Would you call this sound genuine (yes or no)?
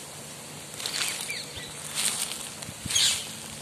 yes